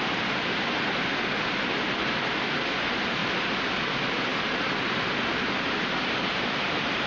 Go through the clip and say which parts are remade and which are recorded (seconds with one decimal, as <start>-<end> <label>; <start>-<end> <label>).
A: 0.0-3.2 remade; 3.2-3.9 recorded; 3.9-7.1 remade